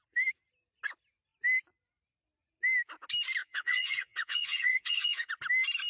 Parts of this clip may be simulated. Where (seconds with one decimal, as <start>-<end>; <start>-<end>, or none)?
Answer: 3.4-5.3